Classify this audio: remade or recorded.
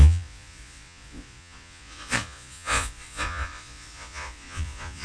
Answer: remade